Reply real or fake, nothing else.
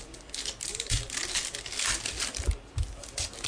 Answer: real